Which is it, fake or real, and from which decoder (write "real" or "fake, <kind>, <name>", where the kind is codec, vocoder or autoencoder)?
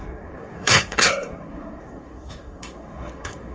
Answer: fake, codec, SNAC